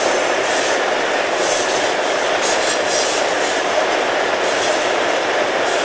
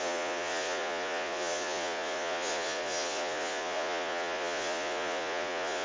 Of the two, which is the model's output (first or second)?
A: second